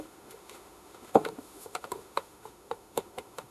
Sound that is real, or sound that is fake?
fake